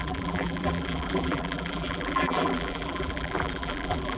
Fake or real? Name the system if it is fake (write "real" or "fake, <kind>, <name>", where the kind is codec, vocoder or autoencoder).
fake, vocoder, BigVGAN v2